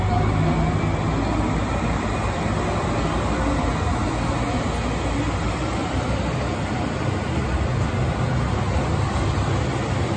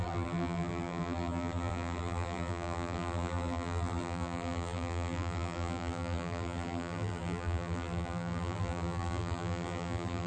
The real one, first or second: first